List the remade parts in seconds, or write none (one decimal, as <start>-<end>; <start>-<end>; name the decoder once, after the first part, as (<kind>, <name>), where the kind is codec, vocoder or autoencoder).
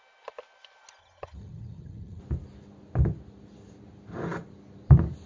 1.0-2.2 (vocoder, HiFi-GAN)